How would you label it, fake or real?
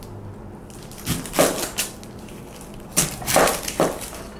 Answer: real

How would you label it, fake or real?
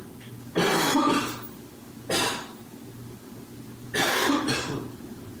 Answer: real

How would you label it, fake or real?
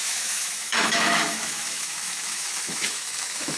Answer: fake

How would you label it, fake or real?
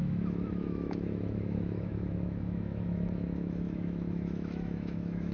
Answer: fake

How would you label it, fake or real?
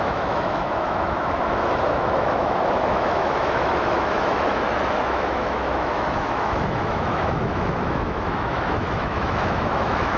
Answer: fake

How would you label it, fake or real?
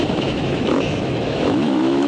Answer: fake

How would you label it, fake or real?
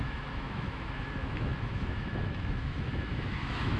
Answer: fake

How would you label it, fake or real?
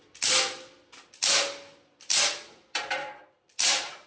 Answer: real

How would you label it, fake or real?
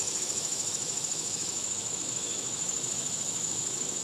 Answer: fake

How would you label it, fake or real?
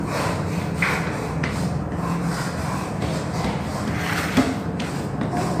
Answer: real